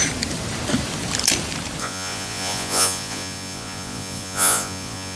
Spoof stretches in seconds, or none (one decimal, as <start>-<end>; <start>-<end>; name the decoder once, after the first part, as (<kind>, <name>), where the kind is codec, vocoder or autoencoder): 1.8-5.2 (vocoder, Vocos)